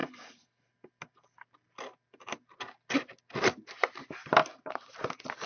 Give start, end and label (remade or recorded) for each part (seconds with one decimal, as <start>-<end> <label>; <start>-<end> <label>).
0.0-5.5 recorded